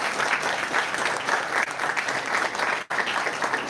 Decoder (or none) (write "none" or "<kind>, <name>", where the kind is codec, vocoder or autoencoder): none